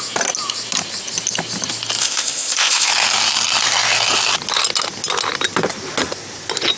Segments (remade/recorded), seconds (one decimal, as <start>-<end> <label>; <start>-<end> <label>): 0.0-2.0 recorded; 2.0-2.9 remade; 2.9-6.8 recorded